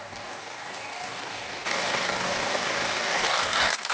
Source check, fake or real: fake